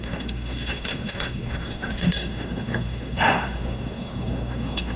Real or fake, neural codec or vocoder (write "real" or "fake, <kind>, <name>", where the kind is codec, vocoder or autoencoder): fake, codec, SNAC